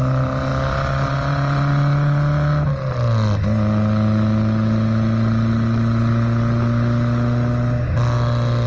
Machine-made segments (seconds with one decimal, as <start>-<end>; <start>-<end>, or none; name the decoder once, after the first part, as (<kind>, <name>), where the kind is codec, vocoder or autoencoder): none